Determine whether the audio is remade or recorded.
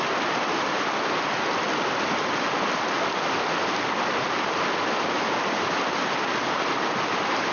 recorded